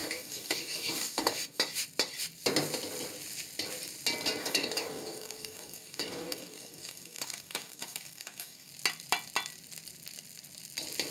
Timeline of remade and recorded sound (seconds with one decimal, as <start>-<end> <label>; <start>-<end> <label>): 0.0-1.6 remade; 1.6-4.4 recorded; 4.4-8.7 remade; 8.7-11.1 recorded